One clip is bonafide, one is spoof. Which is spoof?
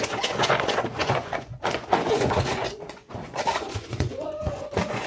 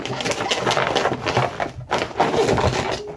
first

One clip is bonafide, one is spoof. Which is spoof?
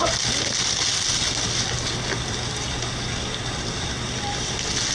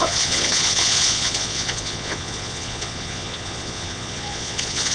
second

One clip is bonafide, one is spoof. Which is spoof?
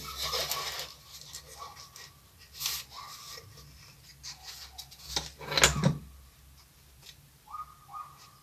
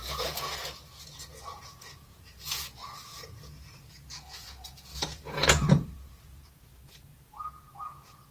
second